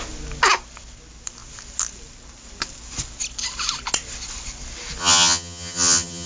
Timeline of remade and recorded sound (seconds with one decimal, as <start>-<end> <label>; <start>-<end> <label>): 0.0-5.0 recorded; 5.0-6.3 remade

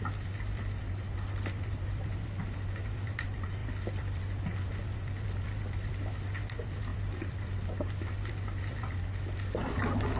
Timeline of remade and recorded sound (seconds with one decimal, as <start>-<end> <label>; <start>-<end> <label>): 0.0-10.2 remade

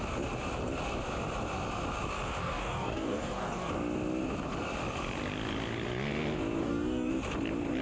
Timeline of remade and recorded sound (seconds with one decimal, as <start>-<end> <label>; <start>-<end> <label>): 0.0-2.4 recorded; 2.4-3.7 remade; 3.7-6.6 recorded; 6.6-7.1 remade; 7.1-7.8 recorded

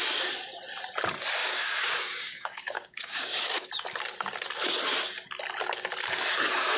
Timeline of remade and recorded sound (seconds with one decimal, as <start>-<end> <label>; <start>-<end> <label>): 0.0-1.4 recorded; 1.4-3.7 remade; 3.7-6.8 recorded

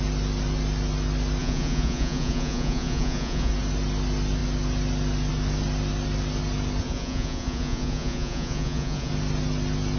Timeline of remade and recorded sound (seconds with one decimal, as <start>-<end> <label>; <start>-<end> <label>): 0.0-1.4 recorded; 1.4-3.5 remade; 3.5-6.8 recorded; 6.8-9.1 remade; 9.1-10.0 recorded